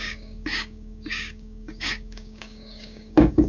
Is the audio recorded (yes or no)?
no